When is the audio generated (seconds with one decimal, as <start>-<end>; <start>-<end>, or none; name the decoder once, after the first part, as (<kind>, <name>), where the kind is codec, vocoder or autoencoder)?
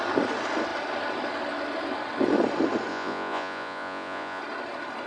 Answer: 2.9-4.4 (vocoder, Vocos)